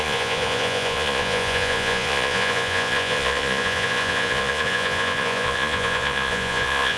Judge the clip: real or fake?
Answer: fake